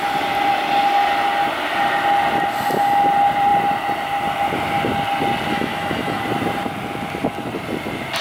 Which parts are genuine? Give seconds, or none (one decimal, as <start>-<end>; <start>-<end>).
0.0-5.5; 6.2-8.2